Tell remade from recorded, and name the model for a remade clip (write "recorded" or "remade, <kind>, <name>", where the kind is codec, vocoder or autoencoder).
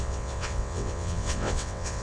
remade, vocoder, WaveNeXt